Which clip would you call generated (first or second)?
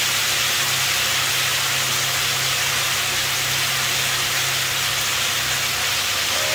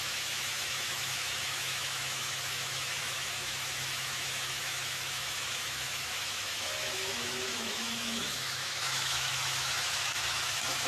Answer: second